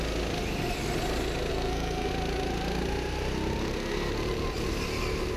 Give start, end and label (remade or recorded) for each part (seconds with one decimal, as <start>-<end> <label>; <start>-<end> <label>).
0.0-1.5 recorded; 1.5-2.1 remade; 2.1-3.6 recorded; 3.6-4.1 remade; 4.1-5.4 recorded